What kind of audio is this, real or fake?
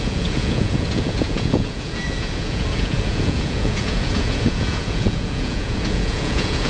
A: fake